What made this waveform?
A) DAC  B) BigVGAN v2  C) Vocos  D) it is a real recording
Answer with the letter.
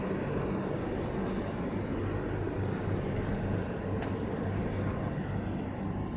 D